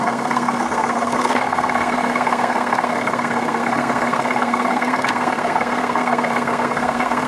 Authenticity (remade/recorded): remade